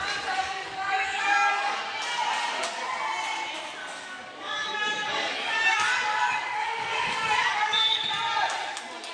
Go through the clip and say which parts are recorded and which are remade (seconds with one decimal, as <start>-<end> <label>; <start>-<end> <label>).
0.0-0.4 recorded; 0.4-1.8 remade; 1.8-3.8 recorded; 3.8-8.1 remade; 8.1-9.1 recorded